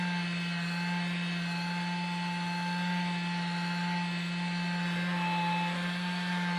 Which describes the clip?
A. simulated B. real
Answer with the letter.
B